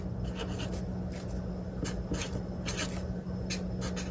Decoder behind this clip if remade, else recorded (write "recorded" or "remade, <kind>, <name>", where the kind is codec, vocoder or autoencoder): recorded